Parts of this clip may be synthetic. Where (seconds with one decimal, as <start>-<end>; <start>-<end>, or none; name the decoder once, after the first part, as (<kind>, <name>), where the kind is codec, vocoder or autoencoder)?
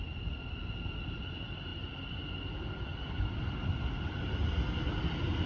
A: none